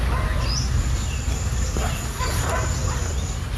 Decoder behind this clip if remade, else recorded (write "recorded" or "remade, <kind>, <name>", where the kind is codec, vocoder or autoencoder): recorded